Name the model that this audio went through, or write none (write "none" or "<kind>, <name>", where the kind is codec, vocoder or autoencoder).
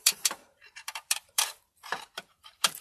vocoder, BigVGAN v2